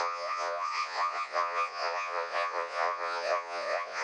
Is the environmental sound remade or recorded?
remade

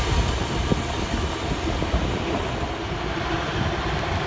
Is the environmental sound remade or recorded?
recorded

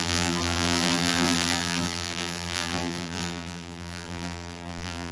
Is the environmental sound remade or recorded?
remade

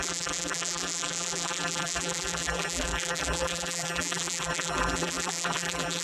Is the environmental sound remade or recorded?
remade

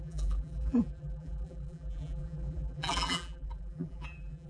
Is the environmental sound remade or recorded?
remade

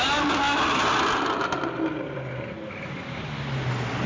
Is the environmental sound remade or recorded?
recorded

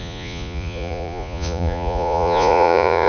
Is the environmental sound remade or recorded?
remade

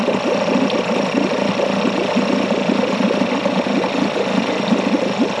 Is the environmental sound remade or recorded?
recorded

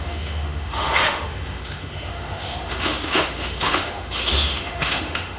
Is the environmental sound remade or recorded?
remade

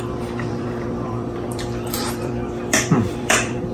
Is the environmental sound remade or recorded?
remade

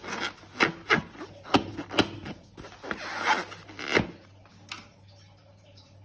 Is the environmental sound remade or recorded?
recorded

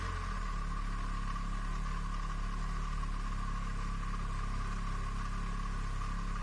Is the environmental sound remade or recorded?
recorded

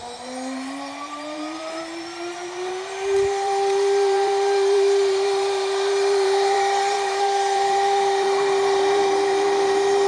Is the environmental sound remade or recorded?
remade